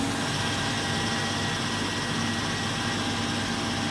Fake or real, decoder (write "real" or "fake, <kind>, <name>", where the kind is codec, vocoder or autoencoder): real